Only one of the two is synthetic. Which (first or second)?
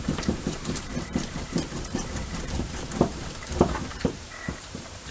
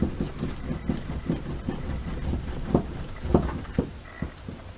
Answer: first